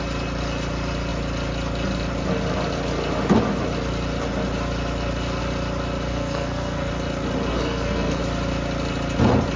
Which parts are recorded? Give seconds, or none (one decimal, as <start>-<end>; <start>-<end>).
0.0-6.1; 6.9-7.5; 8.2-9.6